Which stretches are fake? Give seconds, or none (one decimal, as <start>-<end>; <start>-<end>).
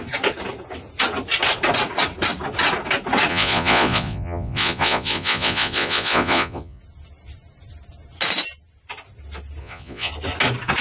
3.3-6.8; 9.6-10.1